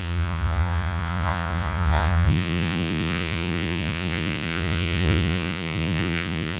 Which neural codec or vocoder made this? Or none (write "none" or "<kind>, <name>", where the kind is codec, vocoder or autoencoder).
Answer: vocoder, Vocos